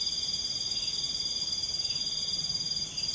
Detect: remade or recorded recorded